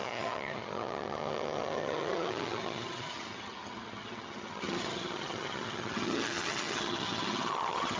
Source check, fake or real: fake